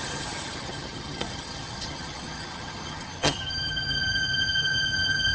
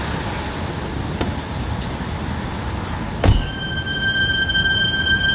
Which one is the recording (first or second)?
second